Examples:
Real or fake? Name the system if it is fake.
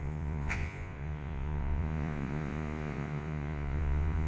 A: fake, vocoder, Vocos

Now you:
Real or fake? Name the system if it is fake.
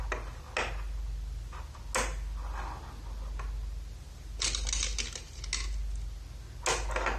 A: real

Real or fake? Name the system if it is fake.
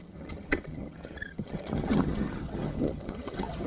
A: fake, vocoder, HiFi-GAN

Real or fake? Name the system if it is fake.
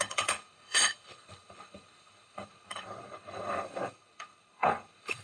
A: fake, codec, HILCodec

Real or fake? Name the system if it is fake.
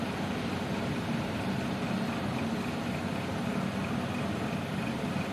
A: fake, vocoder, BigVGAN v2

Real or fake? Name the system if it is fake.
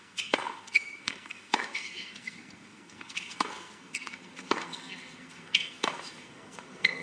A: fake, codec, SNAC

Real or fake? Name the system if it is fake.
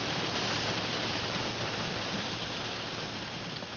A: fake, vocoder, BigVGAN v2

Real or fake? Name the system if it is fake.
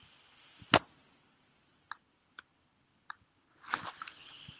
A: real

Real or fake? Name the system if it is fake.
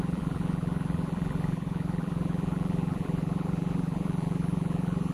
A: fake, vocoder, BigVGAN v2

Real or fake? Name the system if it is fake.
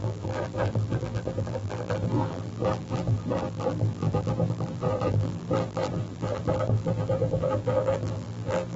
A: fake, vocoder, BigVGAN v2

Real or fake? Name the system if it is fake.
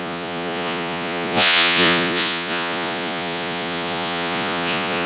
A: fake, vocoder, Vocos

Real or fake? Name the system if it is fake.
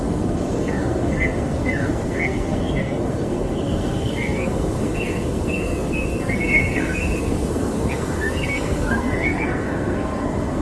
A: fake, codec, SNAC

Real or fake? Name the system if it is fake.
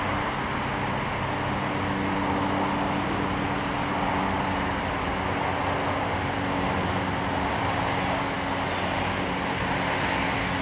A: real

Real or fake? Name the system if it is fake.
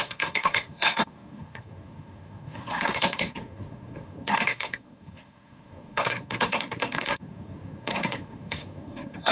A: fake, codec, SNAC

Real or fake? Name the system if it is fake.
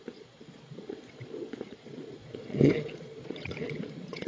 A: fake, vocoder, Vocos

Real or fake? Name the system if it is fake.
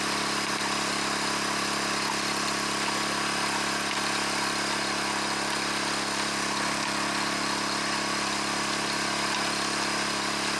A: real